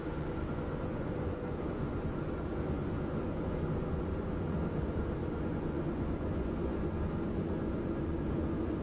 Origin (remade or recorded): remade